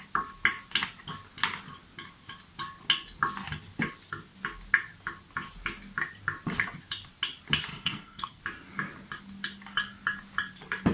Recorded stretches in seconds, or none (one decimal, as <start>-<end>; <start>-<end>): 0.0-7.7; 8.4-10.9